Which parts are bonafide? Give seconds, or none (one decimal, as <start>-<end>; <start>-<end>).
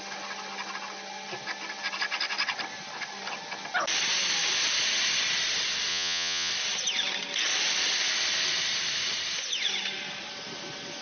0.0-5.9; 6.5-11.0